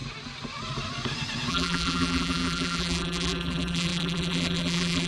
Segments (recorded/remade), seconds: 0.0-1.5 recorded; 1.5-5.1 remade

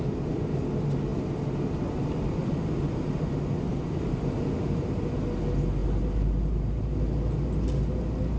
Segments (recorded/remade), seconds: 0.0-8.4 recorded